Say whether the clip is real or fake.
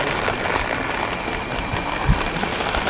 real